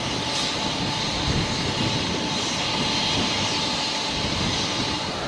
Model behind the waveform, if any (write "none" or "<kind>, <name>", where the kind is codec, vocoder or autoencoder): none